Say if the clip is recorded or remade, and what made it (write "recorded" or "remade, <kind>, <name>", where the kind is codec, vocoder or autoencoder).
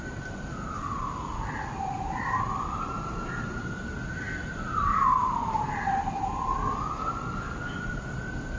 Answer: recorded